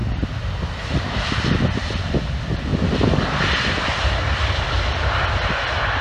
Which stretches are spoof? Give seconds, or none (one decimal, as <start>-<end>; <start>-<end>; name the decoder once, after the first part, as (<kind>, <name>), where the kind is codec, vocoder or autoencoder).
none